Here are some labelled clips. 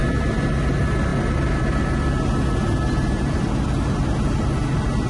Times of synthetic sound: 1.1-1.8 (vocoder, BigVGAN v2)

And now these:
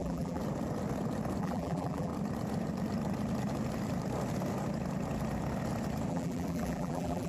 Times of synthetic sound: 0.0-0.4 (vocoder, BigVGAN v2); 1.4-2.1; 6.1-7.3

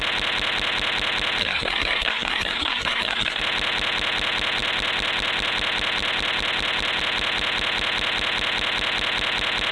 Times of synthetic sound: 1.4-3.4 (codec, SNAC)

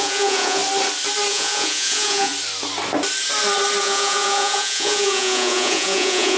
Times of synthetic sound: 0.0-0.6 (vocoder, Vocos); 1.3-2.3; 3.8-6.4

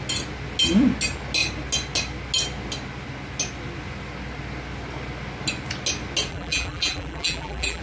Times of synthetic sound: 6.3-7.8 (vocoder, BigVGAN v2)

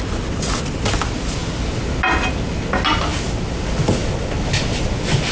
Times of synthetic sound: none